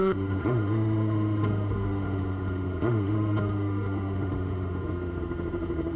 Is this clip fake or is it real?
fake